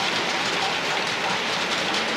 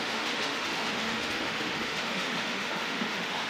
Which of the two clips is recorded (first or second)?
first